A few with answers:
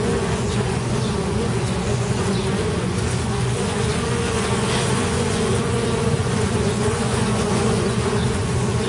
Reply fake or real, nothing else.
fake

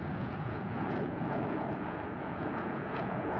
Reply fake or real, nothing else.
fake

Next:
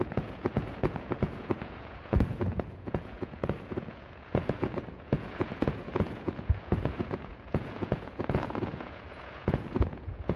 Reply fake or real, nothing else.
fake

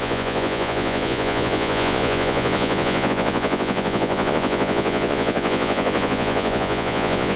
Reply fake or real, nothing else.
fake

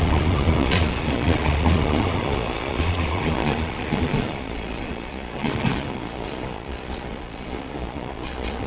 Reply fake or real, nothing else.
fake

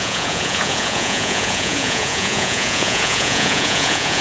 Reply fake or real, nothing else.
fake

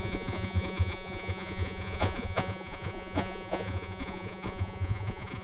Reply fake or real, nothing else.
fake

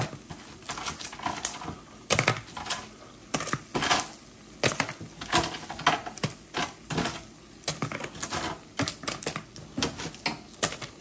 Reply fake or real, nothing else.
real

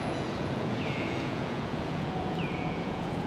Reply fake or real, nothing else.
fake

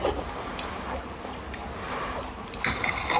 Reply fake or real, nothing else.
real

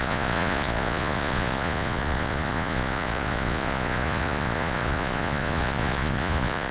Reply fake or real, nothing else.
fake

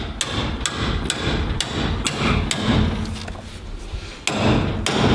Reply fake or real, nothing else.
real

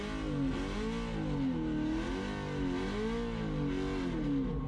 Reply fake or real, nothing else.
real